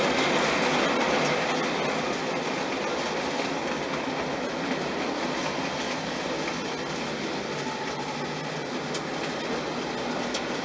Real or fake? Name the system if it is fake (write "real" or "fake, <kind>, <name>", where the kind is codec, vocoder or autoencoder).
real